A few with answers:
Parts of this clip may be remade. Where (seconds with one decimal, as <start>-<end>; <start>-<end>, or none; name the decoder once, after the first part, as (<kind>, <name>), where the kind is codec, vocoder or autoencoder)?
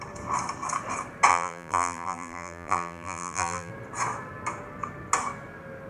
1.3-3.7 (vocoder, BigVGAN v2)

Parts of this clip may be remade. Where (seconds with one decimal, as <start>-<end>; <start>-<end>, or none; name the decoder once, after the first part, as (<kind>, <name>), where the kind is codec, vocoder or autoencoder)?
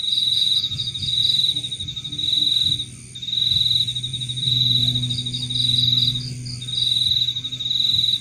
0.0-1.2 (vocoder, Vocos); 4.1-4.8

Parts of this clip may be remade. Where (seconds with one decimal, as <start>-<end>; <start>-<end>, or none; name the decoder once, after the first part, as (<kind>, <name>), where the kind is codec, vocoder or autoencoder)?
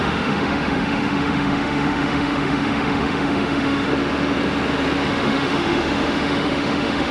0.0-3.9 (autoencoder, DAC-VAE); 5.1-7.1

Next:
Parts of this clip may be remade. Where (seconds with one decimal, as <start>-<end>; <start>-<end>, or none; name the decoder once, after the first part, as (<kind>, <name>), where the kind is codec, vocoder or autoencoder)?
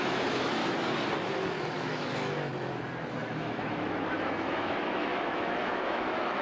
0.0-0.6 (autoencoder, DAC-VAE); 1.6-2.5; 3.1-6.4